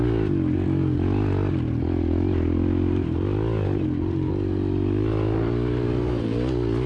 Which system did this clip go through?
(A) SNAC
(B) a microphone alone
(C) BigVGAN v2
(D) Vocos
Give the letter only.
B